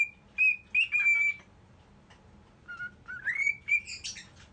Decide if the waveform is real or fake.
real